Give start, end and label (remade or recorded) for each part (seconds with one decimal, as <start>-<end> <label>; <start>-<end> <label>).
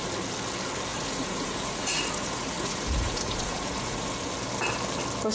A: 0.0-0.9 recorded; 0.9-4.1 remade; 4.1-5.3 recorded